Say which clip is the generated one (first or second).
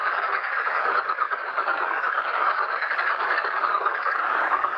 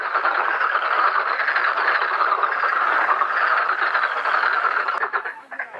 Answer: first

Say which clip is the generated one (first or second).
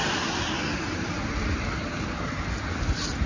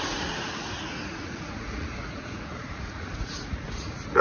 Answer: second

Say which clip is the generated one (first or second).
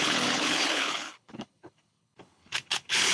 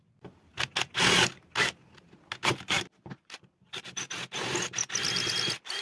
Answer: first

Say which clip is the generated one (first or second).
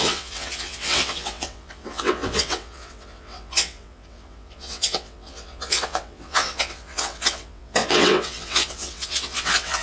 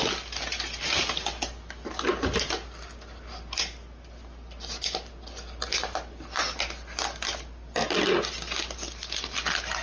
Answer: first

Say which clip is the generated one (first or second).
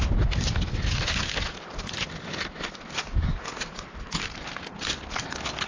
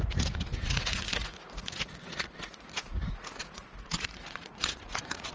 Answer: second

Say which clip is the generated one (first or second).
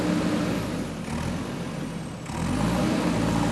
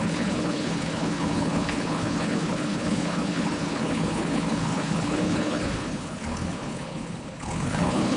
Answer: second